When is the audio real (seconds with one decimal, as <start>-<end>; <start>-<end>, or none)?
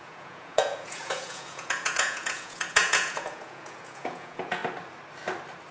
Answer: 4.6-5.7